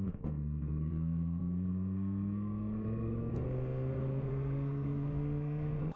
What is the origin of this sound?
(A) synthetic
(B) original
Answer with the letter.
A